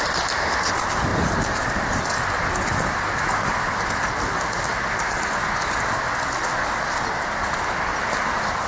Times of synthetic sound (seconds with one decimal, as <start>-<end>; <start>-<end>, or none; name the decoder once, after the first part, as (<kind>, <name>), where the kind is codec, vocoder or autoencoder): none